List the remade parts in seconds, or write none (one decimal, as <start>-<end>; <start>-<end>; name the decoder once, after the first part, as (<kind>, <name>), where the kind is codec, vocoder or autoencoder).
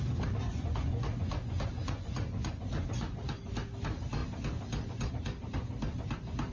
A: 0.5-3.4 (vocoder, Vocos)